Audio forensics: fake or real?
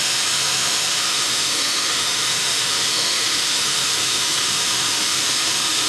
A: fake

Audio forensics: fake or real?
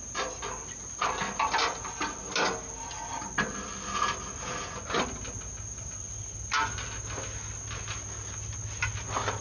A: real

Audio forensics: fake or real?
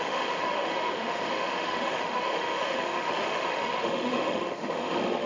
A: fake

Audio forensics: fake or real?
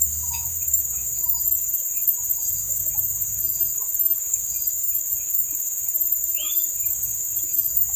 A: fake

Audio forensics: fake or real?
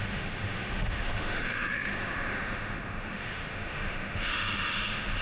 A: fake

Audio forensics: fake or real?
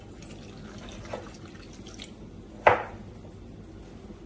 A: real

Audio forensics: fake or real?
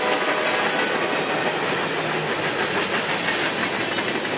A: real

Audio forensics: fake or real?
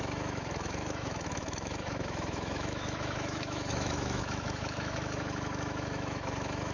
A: fake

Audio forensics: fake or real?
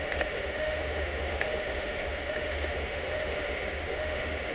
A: fake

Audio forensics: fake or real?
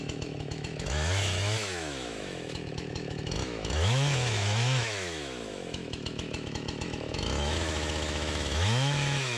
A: fake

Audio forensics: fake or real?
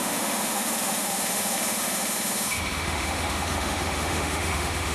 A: fake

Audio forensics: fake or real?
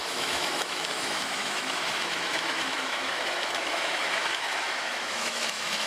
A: fake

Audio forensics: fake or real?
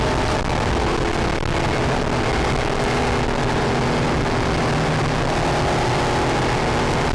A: real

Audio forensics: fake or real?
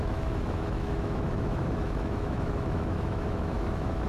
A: fake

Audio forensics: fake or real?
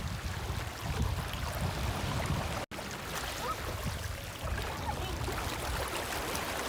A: real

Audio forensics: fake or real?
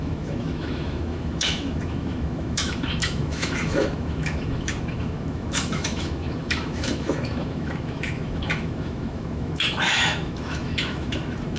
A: fake